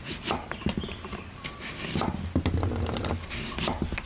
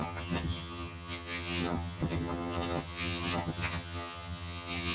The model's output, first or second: second